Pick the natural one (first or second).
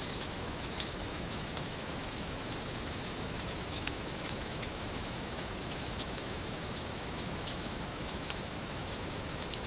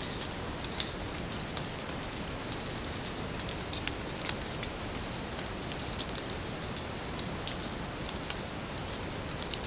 second